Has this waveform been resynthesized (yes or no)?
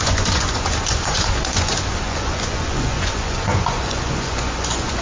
yes